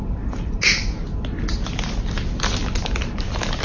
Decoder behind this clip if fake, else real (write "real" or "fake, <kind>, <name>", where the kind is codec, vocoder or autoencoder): real